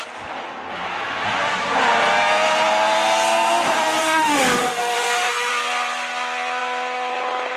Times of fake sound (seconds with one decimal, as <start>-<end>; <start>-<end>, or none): 4.0-5.5